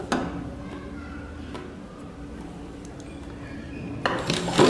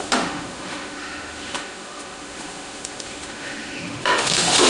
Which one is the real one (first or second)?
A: first